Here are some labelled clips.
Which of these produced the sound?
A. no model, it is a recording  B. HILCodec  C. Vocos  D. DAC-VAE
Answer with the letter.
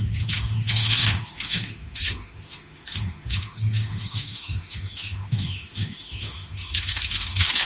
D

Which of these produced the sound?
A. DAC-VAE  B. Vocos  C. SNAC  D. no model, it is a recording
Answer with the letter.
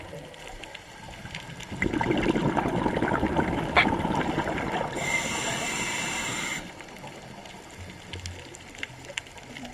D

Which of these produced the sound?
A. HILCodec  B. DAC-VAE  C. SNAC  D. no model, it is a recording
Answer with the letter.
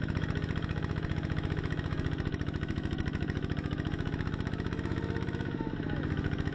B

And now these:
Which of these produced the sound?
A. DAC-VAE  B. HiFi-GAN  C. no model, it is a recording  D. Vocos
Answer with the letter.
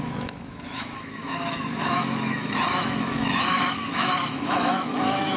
A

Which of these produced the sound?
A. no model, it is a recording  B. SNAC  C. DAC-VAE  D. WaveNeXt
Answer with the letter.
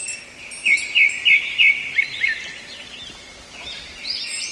A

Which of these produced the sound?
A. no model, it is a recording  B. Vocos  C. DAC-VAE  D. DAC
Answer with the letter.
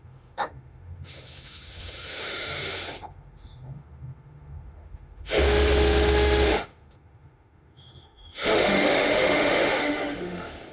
C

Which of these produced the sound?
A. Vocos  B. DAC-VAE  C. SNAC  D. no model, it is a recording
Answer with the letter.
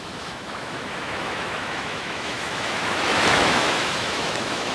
B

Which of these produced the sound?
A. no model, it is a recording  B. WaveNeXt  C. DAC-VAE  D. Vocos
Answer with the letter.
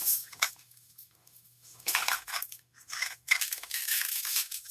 C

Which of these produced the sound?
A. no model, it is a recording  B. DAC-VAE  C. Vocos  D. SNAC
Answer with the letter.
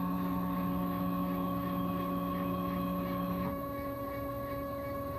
B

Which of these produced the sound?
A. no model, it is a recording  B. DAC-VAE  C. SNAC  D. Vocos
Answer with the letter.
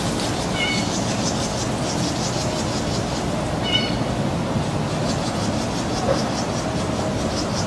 A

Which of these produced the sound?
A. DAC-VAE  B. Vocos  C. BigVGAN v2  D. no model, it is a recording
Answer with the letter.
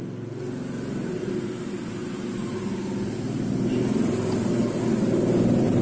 D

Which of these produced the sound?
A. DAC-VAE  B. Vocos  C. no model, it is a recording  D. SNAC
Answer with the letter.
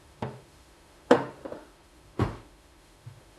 A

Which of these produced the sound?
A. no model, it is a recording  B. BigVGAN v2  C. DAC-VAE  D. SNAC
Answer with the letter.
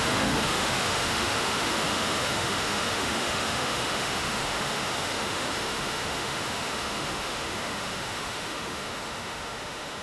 C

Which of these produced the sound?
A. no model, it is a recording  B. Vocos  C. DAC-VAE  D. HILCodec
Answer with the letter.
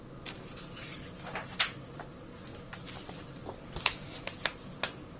A